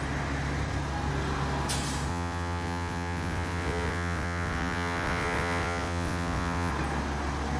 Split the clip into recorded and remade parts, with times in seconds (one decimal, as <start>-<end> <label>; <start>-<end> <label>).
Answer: 0.0-2.1 recorded; 2.1-6.7 remade; 6.7-7.6 recorded